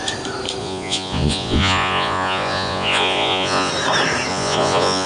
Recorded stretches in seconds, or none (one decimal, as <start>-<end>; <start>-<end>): 0.0-0.6; 3.7-4.3